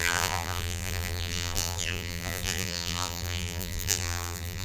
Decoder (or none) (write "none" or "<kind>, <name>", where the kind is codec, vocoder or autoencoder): vocoder, BigVGAN v2